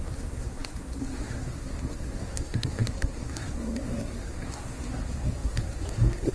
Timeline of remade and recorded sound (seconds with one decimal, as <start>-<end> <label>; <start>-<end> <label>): 0.0-6.3 remade